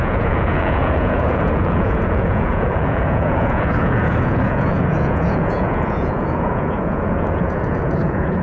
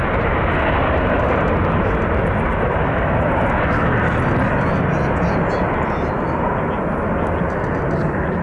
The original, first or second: second